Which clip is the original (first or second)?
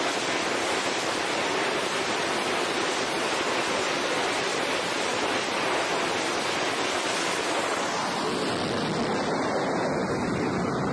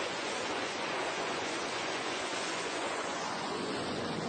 first